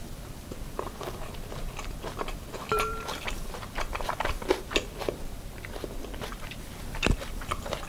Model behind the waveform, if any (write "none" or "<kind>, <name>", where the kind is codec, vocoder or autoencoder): vocoder, BigVGAN v2